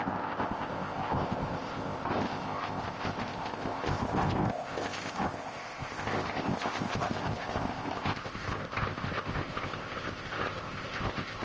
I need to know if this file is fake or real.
fake